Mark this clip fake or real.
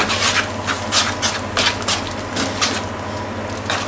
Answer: real